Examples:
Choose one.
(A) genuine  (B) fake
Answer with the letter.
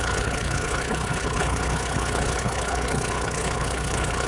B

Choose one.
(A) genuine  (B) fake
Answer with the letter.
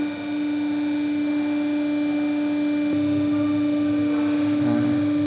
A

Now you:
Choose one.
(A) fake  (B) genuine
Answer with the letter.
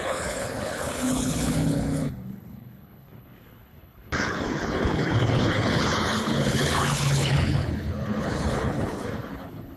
A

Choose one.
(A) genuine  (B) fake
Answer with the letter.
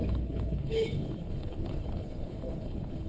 B